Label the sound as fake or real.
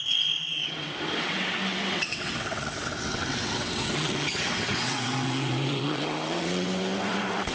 fake